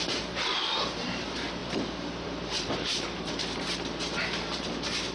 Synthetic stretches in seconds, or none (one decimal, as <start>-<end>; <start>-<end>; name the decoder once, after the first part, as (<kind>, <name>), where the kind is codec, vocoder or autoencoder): 0.0-5.1 (vocoder, BigVGAN v2)